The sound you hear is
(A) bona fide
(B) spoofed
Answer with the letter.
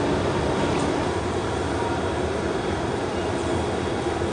A